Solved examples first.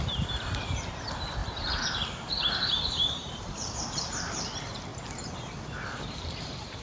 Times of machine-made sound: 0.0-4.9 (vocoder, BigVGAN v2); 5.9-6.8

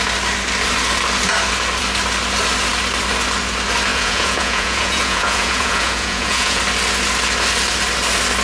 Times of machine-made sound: 3.9-6.6 (vocoder, Vocos)